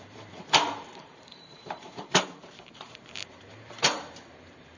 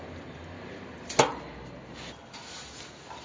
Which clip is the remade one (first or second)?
first